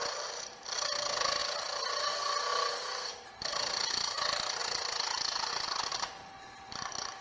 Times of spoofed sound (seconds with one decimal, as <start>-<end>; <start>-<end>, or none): none

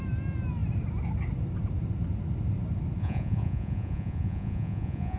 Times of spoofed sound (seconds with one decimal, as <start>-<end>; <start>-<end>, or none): 3.0-5.2

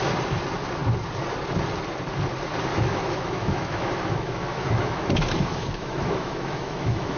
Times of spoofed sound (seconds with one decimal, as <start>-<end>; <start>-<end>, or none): 2.7-7.2

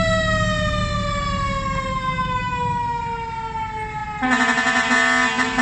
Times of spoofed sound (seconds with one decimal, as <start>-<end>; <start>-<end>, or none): 1.9-3.0